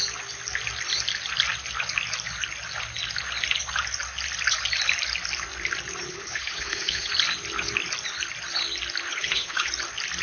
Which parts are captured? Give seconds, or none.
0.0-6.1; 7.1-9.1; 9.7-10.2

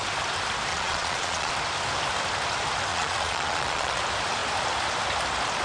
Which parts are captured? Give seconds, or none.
0.0-0.7; 1.5-2.9; 4.0-5.6

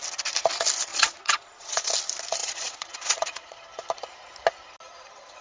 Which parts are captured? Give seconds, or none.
0.0-0.9; 1.9-2.4; 3.6-5.4